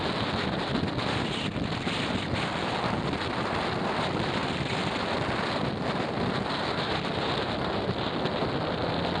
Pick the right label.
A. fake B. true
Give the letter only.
B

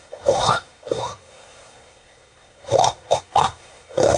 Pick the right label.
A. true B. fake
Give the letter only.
B